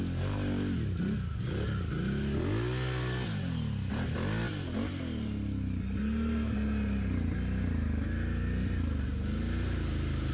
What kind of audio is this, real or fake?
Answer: real